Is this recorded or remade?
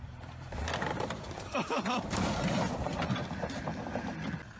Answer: remade